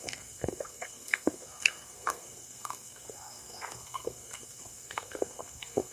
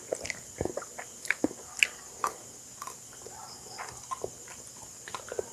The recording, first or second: second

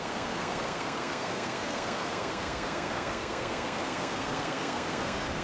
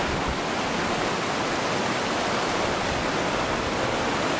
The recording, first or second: second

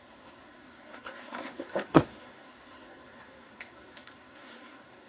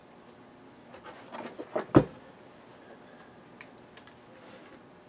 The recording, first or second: second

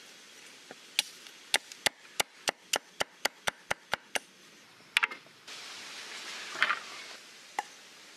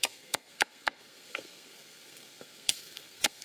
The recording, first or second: first